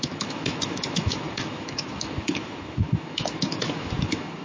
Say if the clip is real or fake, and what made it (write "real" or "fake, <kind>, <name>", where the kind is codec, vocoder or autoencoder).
fake, autoencoder, DAC-VAE